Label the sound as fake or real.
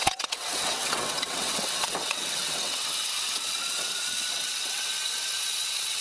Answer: fake